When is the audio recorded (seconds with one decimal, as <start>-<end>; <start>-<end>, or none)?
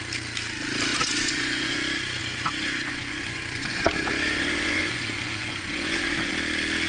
0.0-0.9; 1.8-2.2; 6.3-6.9